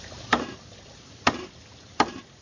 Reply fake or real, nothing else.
fake